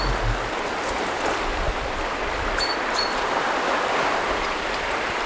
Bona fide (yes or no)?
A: yes